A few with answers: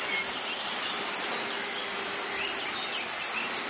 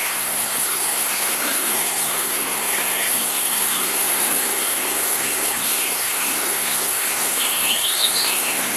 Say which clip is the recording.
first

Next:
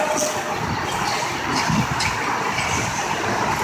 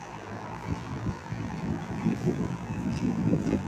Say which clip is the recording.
first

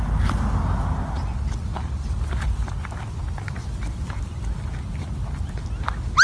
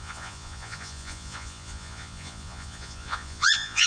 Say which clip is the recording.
first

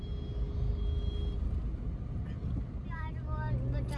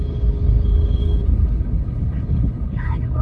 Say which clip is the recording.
first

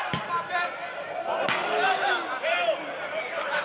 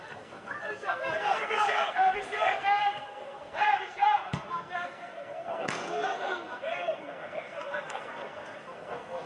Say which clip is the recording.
first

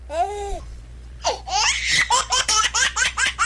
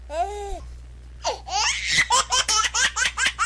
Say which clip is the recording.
second